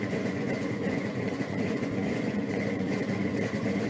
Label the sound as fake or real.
fake